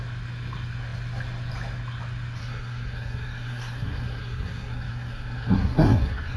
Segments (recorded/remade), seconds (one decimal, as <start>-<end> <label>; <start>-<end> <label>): 0.0-2.4 recorded; 2.4-6.4 remade